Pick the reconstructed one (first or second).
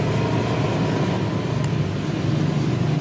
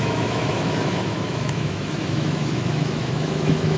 second